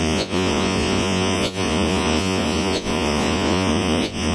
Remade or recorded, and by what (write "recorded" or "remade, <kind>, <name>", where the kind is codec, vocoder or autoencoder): remade, vocoder, Vocos